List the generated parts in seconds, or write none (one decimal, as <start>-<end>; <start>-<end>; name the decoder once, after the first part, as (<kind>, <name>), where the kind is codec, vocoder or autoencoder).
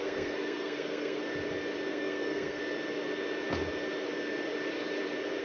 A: 0.0-1.2 (codec, SNAC); 1.9-2.6